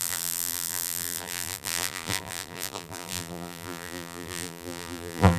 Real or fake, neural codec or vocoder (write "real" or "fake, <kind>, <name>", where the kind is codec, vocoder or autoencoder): fake, vocoder, BigVGAN v2